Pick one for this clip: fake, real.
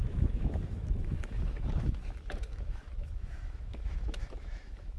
fake